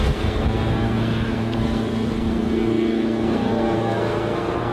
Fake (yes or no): yes